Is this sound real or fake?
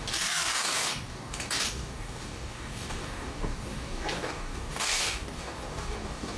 fake